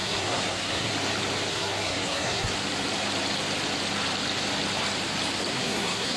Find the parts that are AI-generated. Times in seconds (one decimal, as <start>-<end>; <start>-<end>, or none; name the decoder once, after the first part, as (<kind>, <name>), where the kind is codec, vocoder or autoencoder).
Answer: 0.0-0.9 (codec, SNAC); 1.5-2.5; 5.5-6.2